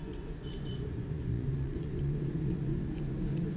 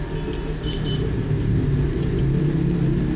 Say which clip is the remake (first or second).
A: first